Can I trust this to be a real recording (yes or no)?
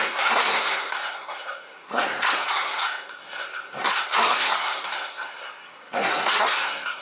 no